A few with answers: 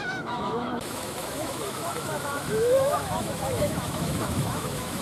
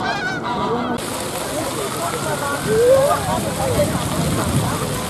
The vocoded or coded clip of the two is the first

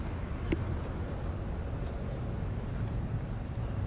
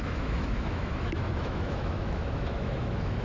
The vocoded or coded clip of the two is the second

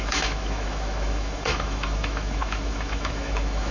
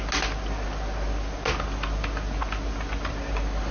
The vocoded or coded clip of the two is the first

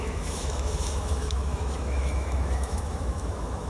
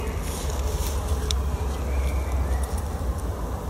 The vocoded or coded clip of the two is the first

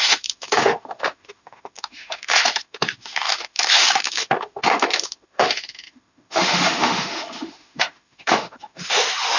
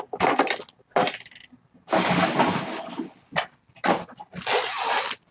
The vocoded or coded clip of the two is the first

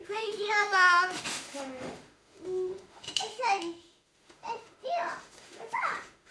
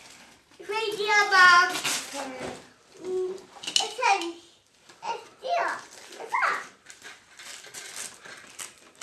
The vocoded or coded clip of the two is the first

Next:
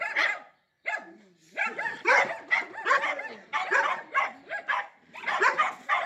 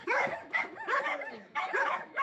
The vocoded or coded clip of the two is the second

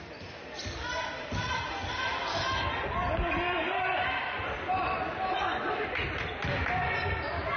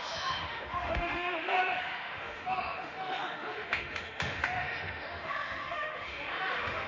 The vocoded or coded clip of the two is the second